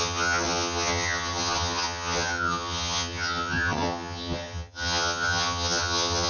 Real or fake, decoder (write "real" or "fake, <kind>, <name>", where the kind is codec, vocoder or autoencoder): fake, vocoder, HiFi-GAN